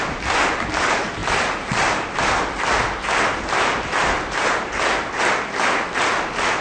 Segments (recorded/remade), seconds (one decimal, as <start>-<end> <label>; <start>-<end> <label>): 0.0-6.6 recorded